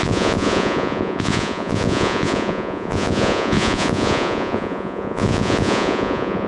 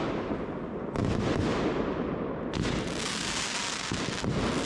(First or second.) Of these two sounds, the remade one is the first